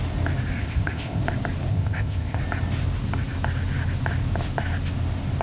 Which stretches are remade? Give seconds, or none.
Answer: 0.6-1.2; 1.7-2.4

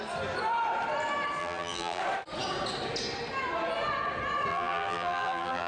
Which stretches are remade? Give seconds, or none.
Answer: 1.4-2.0; 4.5-5.7

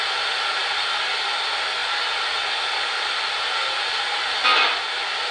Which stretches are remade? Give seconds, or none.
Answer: none

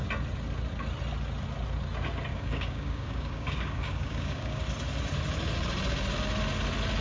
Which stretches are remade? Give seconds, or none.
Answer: 2.3-4.6

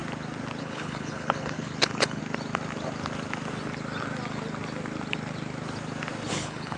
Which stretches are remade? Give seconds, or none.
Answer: 0.6-2.2; 6.3-6.8

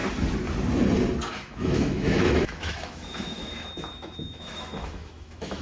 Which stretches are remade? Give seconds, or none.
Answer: 1.3-5.6

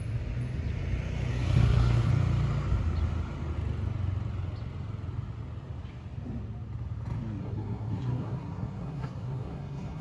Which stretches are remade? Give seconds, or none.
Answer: 1.3-2.1; 7.4-10.0